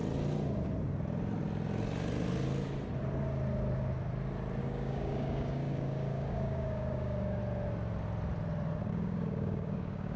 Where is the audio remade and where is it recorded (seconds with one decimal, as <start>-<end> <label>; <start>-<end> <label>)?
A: 0.0-4.6 recorded; 4.6-7.4 remade; 7.4-8.9 recorded; 8.9-10.2 remade